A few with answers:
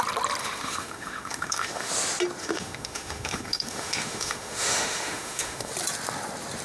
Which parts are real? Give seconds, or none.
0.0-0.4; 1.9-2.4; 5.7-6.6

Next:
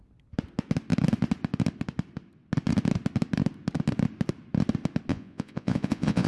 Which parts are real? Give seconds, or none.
0.0-5.1

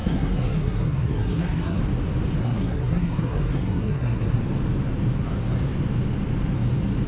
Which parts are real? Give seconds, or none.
1.8-2.4; 4.4-7.1

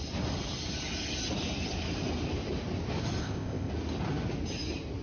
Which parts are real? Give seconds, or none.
0.0-3.2; 3.7-5.0

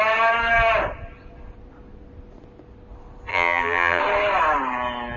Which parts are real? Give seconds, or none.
0.0-3.3; 4.0-5.2

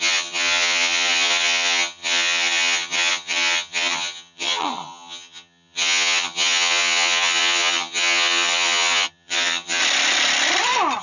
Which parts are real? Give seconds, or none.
9.8-11.0